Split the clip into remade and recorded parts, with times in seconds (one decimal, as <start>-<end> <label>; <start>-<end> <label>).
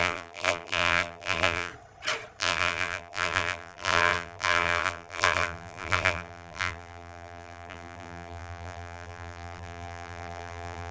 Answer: 0.0-1.7 remade; 1.7-2.4 recorded; 2.4-10.9 remade